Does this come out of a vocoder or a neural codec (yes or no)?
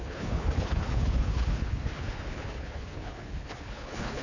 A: yes